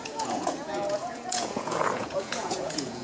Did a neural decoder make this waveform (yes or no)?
yes